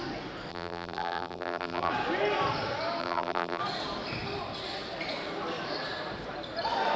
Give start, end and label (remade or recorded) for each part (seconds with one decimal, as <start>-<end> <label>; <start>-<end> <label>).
0.0-0.5 recorded; 0.5-1.9 remade; 1.9-3.0 recorded; 3.0-3.6 remade; 3.6-7.0 recorded